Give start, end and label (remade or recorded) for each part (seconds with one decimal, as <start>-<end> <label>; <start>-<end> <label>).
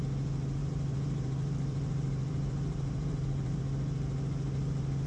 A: 0.0-0.6 recorded; 0.6-3.6 remade; 3.6-5.1 recorded